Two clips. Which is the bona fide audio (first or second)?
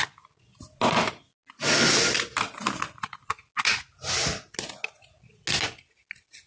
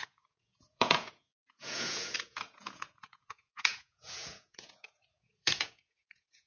first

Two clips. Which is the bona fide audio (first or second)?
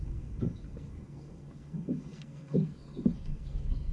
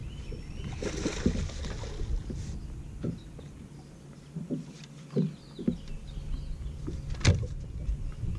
second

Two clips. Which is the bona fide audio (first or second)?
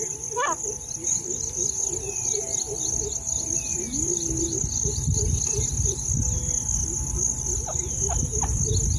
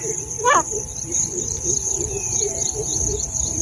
first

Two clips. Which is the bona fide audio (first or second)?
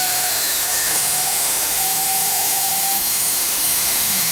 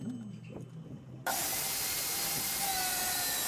second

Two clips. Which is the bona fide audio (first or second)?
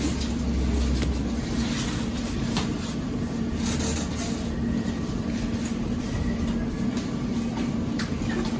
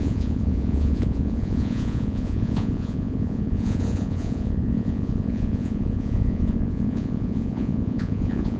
first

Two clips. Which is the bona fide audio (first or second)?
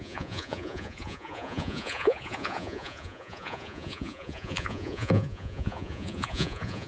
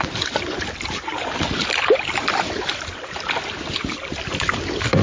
second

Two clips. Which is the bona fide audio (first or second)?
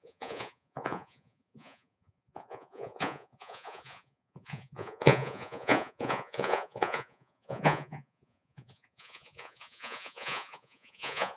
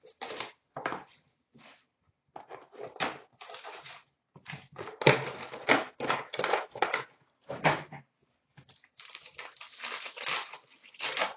second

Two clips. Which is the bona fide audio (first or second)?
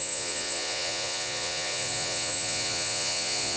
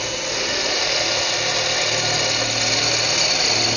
second